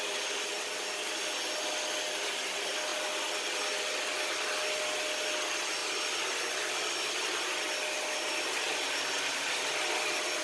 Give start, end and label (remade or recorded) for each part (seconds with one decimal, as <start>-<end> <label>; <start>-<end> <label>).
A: 0.0-10.4 recorded